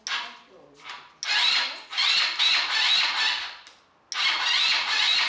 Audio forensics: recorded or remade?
recorded